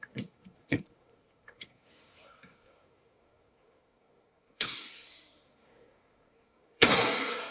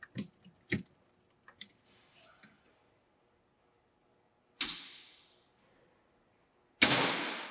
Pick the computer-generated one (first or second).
first